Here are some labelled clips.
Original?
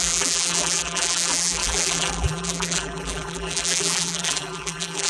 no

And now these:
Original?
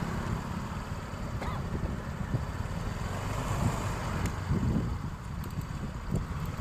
yes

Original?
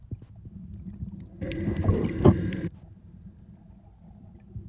yes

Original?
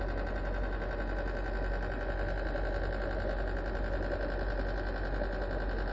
yes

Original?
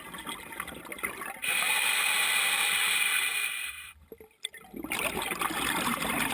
yes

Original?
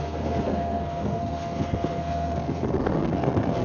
no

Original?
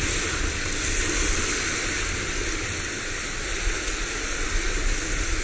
yes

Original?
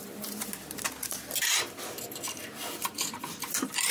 no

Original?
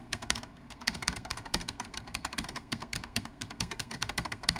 no